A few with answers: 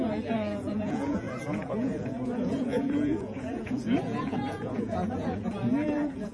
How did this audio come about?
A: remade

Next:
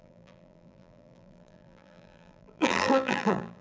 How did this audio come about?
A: remade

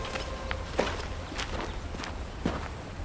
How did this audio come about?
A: recorded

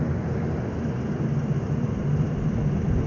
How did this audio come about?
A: remade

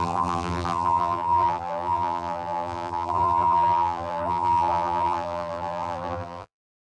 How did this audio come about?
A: remade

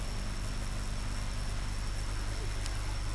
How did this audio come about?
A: recorded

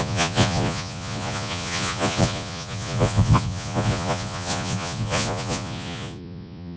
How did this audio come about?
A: remade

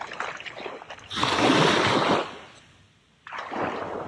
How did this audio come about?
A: recorded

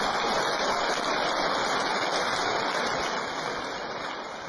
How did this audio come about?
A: recorded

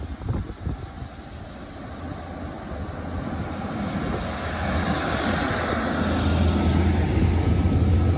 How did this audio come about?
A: recorded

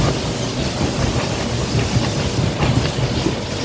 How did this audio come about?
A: recorded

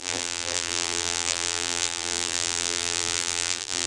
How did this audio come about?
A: remade